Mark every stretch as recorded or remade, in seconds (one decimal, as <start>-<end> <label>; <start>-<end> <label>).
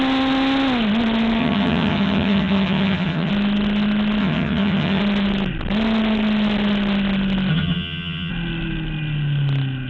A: 0.0-1.4 recorded; 1.4-3.3 remade; 3.3-4.2 recorded; 4.2-5.0 remade; 5.0-7.5 recorded; 7.5-8.3 remade; 8.3-9.9 recorded